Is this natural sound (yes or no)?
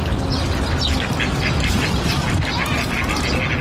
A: yes